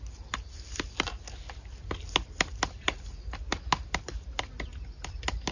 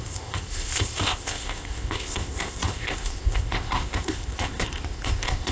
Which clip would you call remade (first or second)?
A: second